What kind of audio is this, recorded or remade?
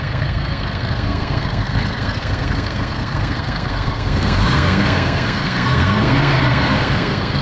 remade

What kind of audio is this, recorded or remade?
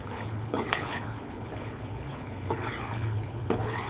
remade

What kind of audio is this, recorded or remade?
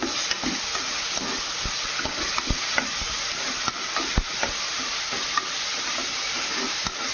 recorded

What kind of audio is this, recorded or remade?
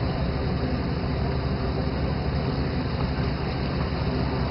recorded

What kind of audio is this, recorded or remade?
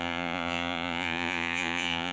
remade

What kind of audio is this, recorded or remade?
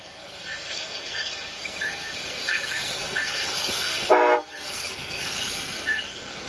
remade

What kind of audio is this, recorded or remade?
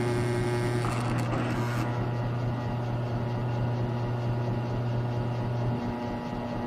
recorded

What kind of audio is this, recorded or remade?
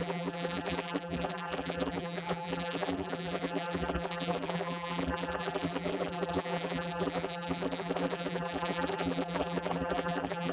remade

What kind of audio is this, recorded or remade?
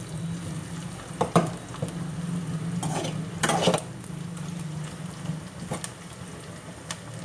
recorded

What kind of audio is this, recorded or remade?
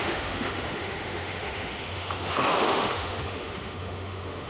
remade